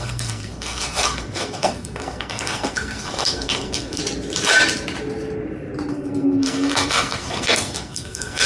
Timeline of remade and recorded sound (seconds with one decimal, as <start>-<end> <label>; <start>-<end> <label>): 0.0-4.0 remade; 4.0-5.9 recorded; 5.9-8.5 remade